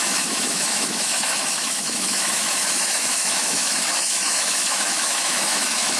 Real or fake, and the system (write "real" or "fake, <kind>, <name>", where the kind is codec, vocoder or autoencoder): fake, autoencoder, DAC-VAE